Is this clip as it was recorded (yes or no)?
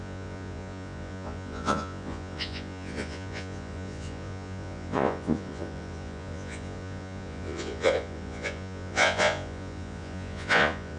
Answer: no